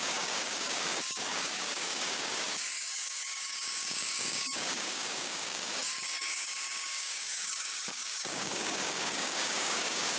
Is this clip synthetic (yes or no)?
yes